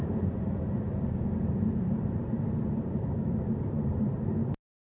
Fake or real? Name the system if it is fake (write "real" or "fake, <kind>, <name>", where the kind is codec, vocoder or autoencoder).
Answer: fake, vocoder, BigVGAN v2